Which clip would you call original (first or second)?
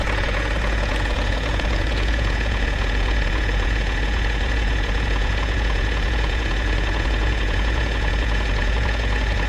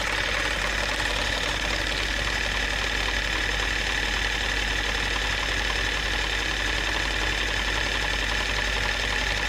second